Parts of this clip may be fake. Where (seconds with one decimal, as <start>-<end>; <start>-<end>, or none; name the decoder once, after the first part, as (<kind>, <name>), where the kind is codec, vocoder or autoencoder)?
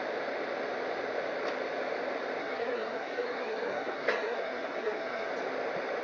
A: 2.4-5.3 (codec, SNAC)